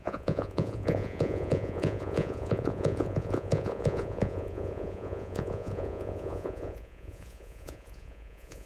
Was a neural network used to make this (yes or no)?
yes